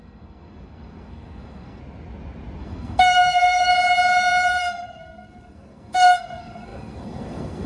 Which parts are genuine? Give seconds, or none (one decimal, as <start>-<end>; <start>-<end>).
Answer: 1.8-2.6; 3.7-4.5